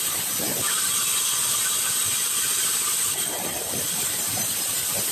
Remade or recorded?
recorded